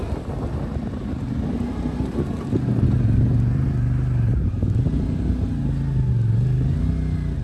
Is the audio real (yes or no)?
yes